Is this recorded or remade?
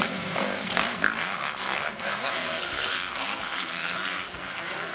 remade